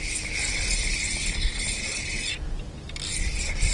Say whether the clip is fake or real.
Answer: real